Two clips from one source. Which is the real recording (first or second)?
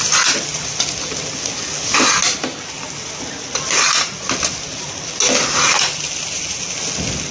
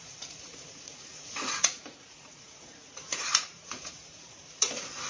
first